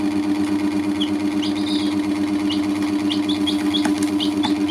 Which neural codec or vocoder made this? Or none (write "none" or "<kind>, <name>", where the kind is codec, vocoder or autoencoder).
none